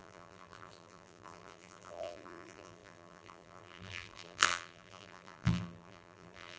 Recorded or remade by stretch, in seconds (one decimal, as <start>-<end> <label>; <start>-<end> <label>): 0.0-6.6 remade